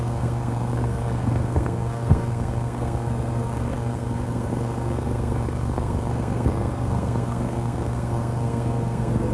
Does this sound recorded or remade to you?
remade